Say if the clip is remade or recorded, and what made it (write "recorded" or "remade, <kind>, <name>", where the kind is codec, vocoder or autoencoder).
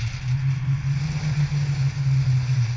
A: recorded